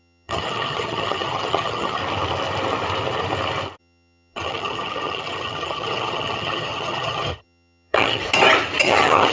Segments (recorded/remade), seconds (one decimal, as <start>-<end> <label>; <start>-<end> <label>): 0.0-2.0 remade; 2.0-3.8 recorded; 3.8-8.2 remade; 8.2-8.8 recorded; 8.8-9.3 remade